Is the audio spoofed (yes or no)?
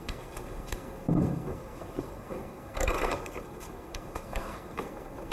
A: yes